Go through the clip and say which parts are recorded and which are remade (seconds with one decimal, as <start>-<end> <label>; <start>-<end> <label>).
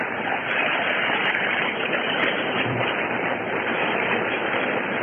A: 0.0-5.0 remade